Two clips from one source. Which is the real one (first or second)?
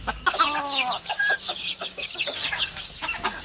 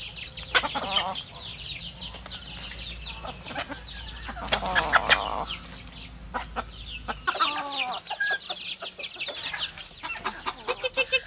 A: second